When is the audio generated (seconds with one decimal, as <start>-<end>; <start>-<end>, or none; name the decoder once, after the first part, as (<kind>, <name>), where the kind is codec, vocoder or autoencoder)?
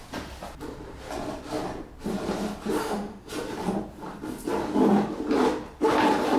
2.8-3.3 (autoencoder, DAC-VAE)